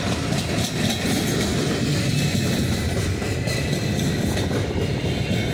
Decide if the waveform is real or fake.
real